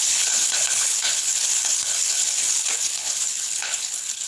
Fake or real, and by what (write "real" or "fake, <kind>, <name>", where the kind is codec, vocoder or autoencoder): fake, codec, HILCodec